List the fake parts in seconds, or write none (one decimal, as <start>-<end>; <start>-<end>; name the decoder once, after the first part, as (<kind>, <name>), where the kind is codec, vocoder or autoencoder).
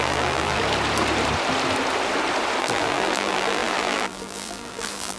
0.0-0.6 (vocoder, BigVGAN v2); 2.6-5.2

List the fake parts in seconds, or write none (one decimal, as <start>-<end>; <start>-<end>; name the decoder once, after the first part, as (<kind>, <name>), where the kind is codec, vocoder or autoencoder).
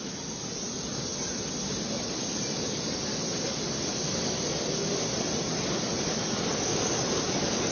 none